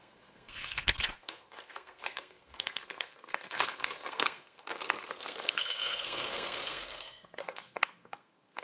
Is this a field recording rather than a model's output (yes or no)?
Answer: no